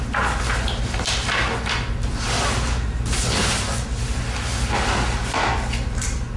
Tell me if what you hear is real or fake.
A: real